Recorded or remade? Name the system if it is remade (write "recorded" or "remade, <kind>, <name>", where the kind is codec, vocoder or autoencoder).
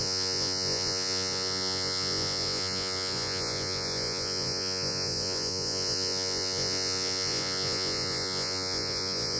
remade, vocoder, Vocos